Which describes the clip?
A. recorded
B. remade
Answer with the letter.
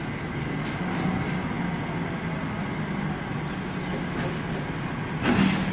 A